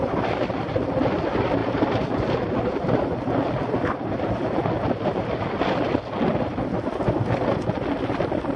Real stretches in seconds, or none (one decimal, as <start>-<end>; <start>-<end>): 0.0-8.6